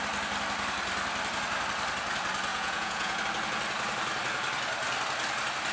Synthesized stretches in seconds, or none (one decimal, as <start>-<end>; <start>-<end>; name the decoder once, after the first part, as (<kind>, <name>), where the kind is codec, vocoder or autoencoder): 2.5-3.2 (vocoder, Vocos)